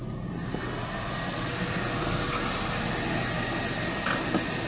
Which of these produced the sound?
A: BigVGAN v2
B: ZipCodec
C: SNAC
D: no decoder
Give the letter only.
D